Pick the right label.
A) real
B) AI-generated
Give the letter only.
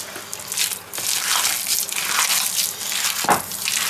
A